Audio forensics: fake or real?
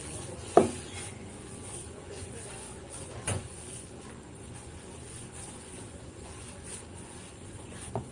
fake